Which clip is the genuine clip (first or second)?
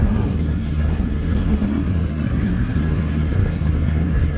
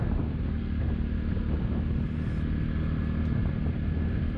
second